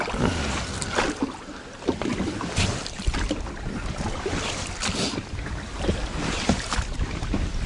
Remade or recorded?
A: recorded